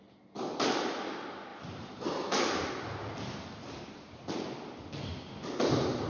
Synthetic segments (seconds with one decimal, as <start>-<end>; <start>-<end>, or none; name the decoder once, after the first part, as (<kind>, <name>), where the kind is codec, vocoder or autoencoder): 1.5-2.7 (vocoder, BigVGAN v2)